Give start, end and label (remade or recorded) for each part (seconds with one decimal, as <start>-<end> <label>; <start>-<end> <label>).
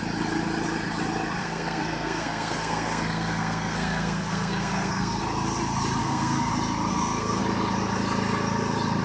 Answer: 0.0-1.4 recorded; 1.4-5.2 remade; 5.2-6.0 recorded; 6.0-6.5 remade; 6.5-6.9 recorded; 6.9-7.4 remade; 7.4-9.0 recorded